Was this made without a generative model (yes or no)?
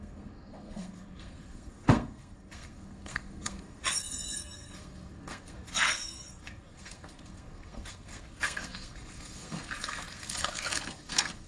no